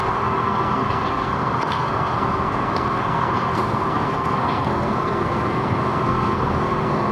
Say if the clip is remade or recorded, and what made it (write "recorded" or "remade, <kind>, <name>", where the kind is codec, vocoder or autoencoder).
remade, codec, SNAC